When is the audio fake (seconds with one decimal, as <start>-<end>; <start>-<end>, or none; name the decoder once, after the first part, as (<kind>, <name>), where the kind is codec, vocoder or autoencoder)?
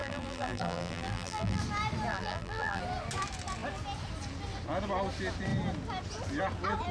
0.0-1.6 (vocoder, BigVGAN v2); 2.1-2.8